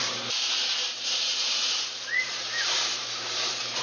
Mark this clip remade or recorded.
remade